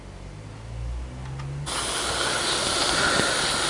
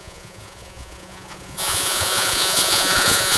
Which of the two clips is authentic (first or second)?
first